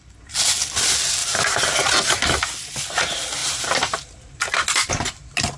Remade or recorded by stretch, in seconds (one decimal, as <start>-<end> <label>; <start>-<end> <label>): 0.0-1.2 recorded; 1.2-2.4 remade; 2.4-3.4 recorded; 3.4-4.4 remade; 4.4-5.6 recorded